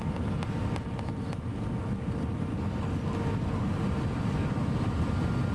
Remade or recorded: recorded